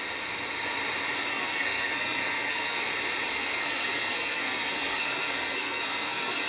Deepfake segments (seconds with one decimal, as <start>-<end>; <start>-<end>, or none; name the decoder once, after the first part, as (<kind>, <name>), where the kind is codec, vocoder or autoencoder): 1.3-2.9 (codec, SNAC); 3.3-6.5